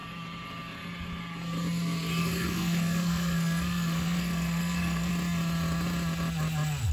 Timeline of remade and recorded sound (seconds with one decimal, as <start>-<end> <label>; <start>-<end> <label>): 0.0-2.2 recorded; 2.2-5.1 remade; 5.1-6.9 recorded